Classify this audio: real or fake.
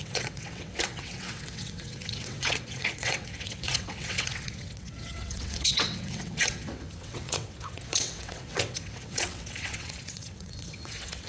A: fake